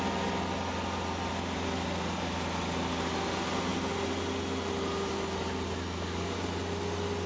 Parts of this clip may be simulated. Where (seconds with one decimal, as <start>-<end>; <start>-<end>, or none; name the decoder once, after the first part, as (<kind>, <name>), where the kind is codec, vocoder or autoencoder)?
none